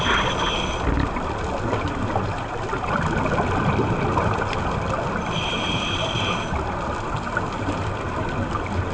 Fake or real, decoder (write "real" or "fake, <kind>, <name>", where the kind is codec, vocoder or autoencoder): real